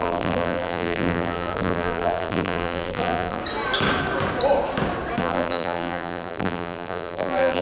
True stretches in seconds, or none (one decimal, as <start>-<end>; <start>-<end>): 3.4-5.2

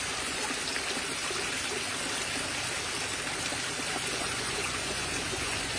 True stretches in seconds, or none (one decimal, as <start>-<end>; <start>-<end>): 0.4-3.9

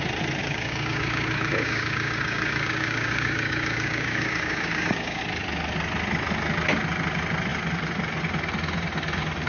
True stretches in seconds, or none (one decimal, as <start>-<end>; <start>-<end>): 0.0-0.4; 5.2-9.5

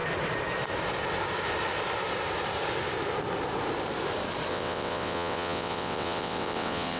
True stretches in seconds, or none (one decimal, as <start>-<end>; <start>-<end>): 0.0-4.5

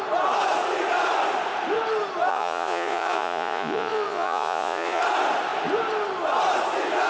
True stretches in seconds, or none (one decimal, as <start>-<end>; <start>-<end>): 0.0-2.3; 5.0-7.1

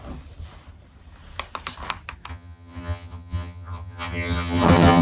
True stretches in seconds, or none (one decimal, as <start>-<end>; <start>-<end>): 0.0-2.3